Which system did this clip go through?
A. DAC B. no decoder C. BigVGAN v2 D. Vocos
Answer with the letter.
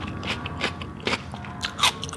B